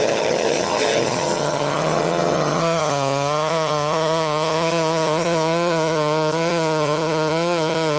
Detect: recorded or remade remade